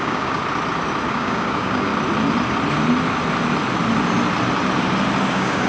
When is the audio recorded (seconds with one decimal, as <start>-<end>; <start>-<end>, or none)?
0.4-1.1; 1.9-5.3